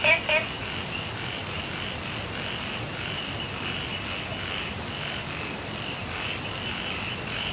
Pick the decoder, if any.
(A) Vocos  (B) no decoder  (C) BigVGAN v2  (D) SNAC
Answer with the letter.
B